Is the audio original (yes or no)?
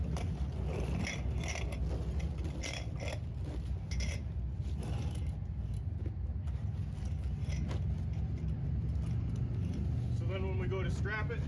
yes